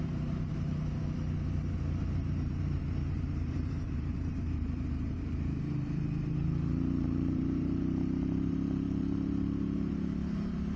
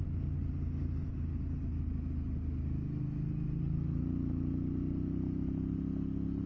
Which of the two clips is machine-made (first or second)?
first